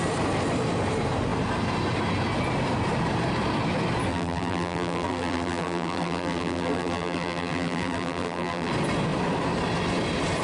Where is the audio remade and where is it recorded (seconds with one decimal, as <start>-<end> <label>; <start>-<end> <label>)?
0.0-4.1 recorded; 4.1-8.7 remade; 8.7-10.4 recorded